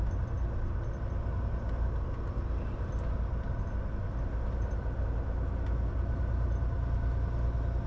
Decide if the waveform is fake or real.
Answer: real